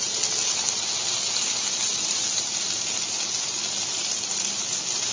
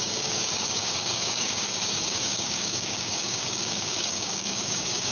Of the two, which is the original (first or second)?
first